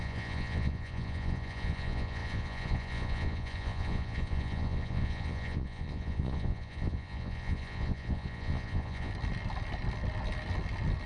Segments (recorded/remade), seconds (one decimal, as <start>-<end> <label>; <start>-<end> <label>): 0.0-9.1 remade; 9.1-11.1 recorded